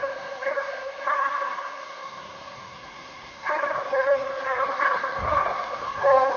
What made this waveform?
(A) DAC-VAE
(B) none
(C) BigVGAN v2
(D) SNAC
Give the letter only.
D